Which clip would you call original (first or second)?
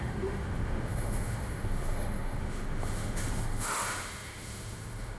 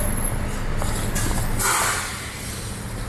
second